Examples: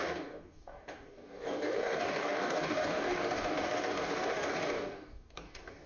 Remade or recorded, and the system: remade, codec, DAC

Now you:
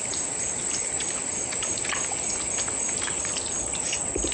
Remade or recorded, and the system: recorded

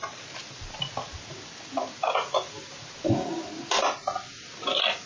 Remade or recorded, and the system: recorded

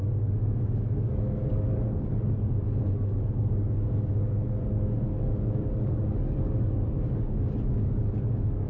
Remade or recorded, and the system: remade, codec, DAC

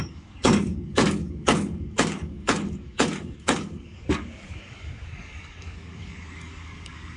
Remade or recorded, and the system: remade, codec, DAC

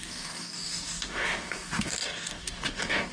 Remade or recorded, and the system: remade, codec, DAC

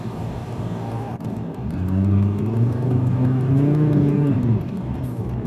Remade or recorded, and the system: remade, codec, DAC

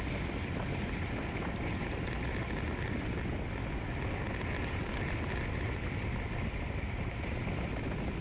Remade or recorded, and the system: recorded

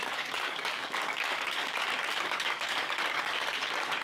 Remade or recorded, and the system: remade, codec, DAC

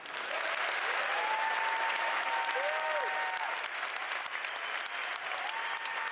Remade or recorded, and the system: recorded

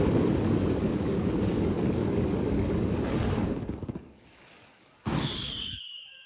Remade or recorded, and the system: remade, codec, DAC